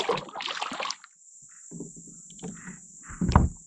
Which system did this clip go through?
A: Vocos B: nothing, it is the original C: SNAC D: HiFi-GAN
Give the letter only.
B